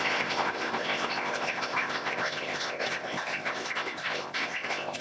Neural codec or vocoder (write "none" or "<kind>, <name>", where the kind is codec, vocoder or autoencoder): codec, ZipCodec